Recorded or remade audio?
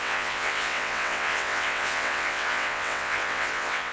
remade